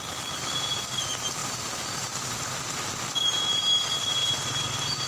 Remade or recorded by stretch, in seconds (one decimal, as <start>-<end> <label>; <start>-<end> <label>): 0.0-1.4 recorded; 1.4-2.9 remade; 2.9-4.2 recorded; 4.2-5.1 remade